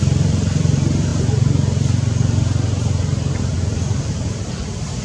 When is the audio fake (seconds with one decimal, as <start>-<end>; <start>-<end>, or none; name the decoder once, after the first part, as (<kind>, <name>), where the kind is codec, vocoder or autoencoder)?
0.0-1.1 (vocoder, BigVGAN v2); 4.1-5.0